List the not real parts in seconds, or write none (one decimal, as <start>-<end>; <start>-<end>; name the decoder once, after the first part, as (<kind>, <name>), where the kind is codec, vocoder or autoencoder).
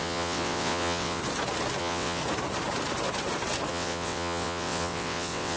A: 0.0-1.2 (vocoder, WaveNeXt); 1.8-2.2; 3.7-5.6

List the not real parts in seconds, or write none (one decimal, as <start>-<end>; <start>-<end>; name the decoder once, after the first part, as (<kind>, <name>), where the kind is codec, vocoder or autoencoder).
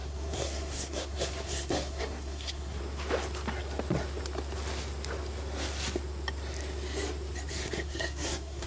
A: 0.0-2.8 (codec, SNAC); 7.5-8.7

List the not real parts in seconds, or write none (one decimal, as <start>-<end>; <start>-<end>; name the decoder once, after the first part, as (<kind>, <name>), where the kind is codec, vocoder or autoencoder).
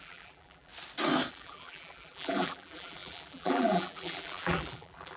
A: 0.0-0.7 (vocoder, BigVGAN v2); 1.3-5.2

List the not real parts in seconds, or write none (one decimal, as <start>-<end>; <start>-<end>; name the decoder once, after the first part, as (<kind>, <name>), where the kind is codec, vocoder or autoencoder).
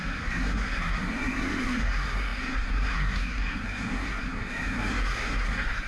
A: 0.0-5.9 (codec, SNAC)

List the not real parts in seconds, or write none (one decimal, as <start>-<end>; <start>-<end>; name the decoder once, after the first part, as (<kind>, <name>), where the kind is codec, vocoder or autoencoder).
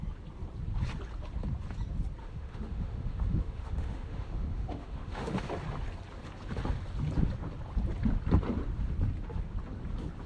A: 2.2-5.5 (autoencoder, DAC-VAE)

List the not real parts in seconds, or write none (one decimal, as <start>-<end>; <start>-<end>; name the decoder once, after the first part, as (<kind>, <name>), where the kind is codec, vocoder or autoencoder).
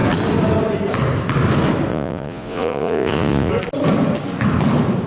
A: 1.9-3.5 (vocoder, Vocos)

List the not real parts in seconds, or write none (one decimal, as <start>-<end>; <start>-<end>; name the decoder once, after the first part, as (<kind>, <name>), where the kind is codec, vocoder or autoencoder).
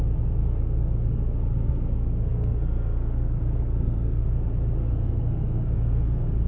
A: 0.4-4.3 (codec, SNAC); 4.8-6.5